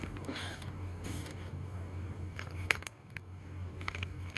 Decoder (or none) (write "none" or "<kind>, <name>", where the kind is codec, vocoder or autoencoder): codec, DAC